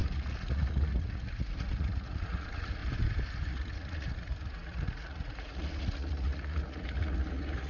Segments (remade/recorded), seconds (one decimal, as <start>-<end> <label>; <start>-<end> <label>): 0.0-2.8 remade; 2.8-3.5 recorded; 3.5-7.7 remade